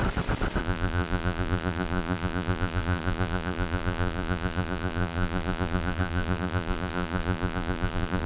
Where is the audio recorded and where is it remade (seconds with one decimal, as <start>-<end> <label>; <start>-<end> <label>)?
0.0-0.6 recorded; 0.6-8.3 remade